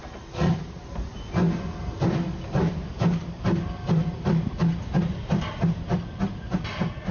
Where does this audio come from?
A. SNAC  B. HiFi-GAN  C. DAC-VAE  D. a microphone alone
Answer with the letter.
D